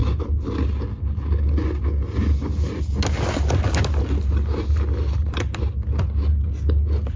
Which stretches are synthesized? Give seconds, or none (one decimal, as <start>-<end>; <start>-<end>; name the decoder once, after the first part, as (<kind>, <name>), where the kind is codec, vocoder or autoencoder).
none